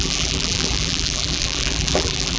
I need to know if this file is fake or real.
fake